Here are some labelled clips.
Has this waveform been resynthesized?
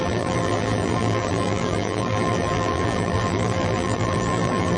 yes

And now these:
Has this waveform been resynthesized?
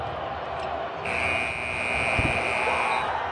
no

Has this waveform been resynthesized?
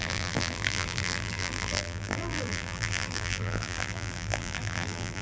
yes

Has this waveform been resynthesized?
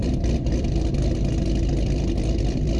yes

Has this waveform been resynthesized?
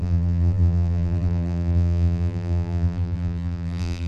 yes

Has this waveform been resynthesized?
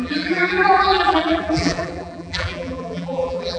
yes